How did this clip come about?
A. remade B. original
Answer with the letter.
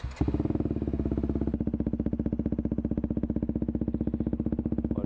B